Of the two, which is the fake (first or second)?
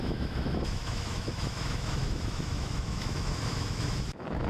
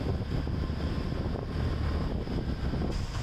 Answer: first